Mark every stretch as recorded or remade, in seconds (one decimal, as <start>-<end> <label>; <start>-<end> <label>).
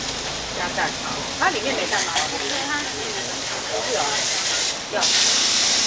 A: 0.0-1.8 recorded; 1.8-2.7 remade; 2.7-5.9 recorded